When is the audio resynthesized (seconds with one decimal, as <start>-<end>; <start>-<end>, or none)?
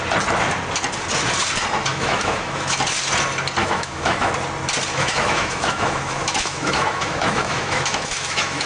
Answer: 1.9-2.8; 3.6-4.3; 4.9-8.7